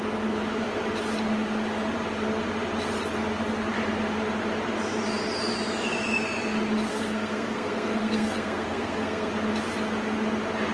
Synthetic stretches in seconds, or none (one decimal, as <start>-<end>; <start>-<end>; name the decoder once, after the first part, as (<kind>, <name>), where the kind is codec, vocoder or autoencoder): 6.9-9.3 (codec, SNAC)